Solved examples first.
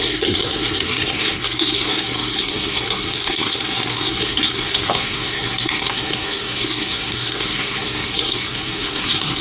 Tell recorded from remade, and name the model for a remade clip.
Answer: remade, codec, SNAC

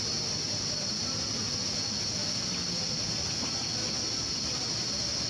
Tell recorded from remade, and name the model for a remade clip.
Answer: recorded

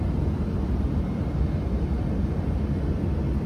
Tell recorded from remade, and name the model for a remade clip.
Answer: recorded